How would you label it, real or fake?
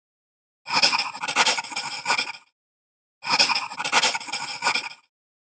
real